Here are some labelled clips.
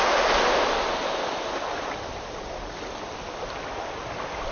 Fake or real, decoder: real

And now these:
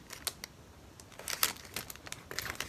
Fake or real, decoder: real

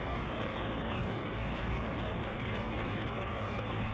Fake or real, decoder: fake, codec, DAC